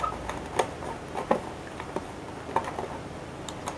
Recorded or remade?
recorded